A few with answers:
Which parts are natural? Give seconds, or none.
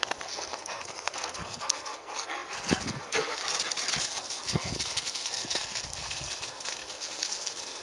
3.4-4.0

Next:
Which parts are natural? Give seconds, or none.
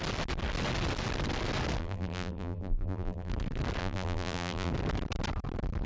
0.0-1.8; 3.3-3.8; 4.7-5.9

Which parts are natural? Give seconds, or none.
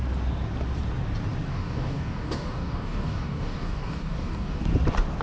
0.0-1.5; 4.6-5.2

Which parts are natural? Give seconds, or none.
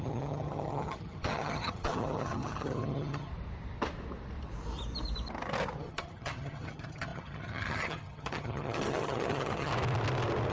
3.3-5.8; 9.7-10.5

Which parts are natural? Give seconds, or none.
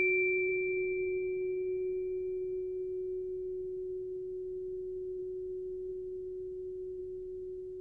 0.0-7.8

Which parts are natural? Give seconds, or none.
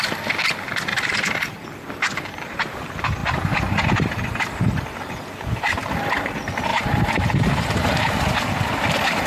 0.0-0.9; 1.5-3.2; 3.9-6.7; 8.3-9.3